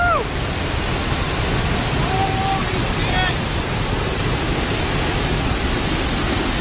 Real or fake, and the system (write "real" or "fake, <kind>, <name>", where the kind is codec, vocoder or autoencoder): real